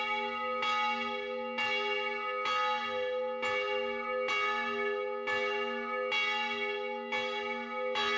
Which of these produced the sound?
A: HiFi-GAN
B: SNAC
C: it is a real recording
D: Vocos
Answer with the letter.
C